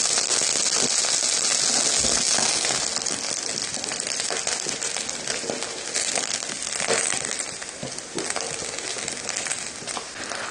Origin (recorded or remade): recorded